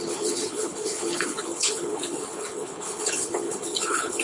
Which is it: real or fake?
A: fake